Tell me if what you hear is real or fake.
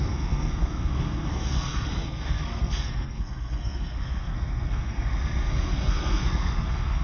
fake